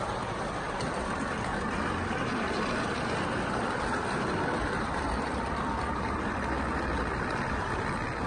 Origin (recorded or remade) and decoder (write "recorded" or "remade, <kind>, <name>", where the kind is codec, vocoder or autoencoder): recorded